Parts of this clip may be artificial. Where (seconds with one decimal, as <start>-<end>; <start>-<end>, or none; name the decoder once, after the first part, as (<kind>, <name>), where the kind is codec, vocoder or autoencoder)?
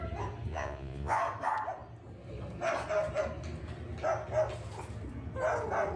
0.5-1.2 (vocoder, Vocos)